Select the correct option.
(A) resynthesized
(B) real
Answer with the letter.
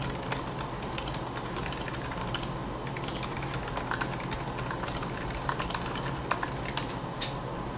B